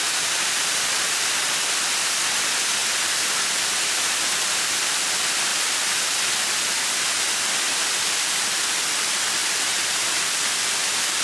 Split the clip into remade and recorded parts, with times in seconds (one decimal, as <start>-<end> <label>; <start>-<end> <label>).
0.0-2.8 remade; 2.8-3.9 recorded; 3.9-5.5 remade; 5.5-7.9 recorded; 7.9-11.2 remade